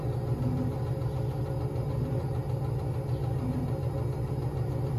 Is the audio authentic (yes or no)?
yes